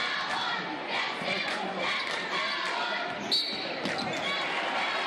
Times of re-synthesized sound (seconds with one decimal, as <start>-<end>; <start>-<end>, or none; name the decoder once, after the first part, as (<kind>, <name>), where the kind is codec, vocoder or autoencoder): 0.7-1.9 (vocoder, Vocos)